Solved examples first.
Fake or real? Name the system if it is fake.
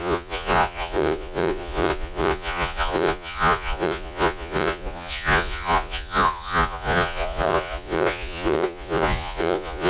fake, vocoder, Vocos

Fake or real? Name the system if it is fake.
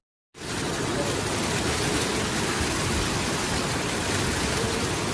real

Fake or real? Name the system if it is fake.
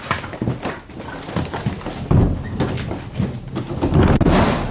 real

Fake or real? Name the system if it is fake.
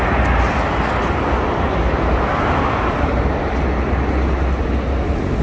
real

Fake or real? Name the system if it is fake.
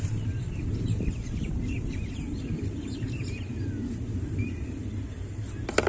real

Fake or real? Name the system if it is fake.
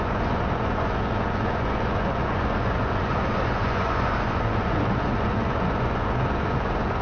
fake, vocoder, Vocos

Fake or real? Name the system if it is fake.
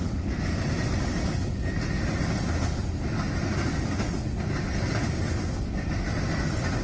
real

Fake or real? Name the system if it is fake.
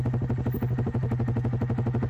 real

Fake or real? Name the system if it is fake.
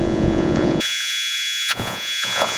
fake, vocoder, Vocos